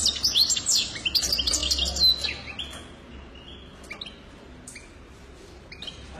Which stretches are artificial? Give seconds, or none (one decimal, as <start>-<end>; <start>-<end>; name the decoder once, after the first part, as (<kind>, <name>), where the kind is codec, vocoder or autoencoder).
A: 0.0-1.6 (vocoder, BigVGAN v2); 4.4-6.2